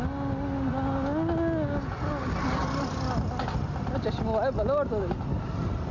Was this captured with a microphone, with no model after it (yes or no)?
yes